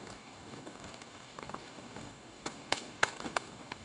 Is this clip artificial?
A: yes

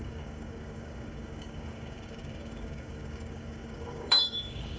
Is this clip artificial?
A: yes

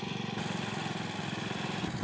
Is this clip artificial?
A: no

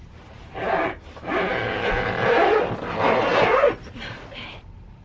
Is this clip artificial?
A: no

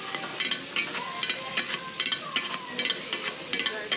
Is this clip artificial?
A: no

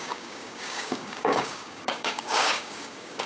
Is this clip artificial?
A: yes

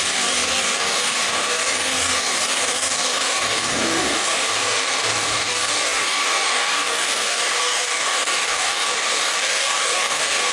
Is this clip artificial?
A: yes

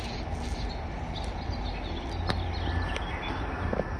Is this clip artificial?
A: no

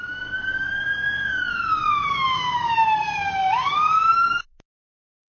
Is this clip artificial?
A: yes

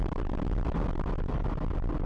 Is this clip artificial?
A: no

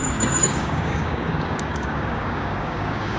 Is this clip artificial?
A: yes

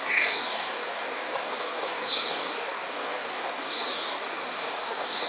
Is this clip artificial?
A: yes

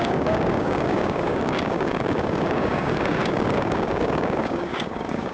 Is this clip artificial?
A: yes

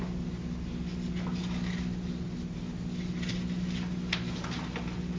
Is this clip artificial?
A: no